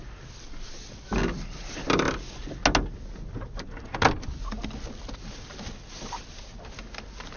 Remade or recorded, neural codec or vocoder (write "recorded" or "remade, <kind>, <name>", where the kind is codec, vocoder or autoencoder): recorded